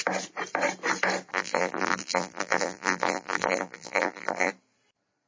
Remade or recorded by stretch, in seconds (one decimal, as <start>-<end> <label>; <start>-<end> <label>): 0.0-1.3 recorded; 1.3-4.5 remade; 4.5-5.3 recorded